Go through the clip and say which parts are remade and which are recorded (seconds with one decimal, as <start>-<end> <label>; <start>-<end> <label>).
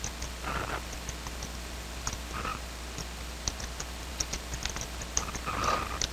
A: 0.0-6.1 recorded